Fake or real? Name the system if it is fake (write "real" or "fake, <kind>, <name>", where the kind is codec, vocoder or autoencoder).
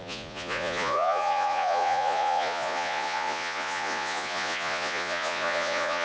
fake, vocoder, Vocos